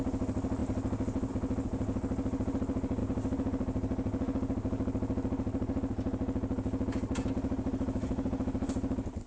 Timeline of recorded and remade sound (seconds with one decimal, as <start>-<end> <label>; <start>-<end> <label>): 0.0-9.3 recorded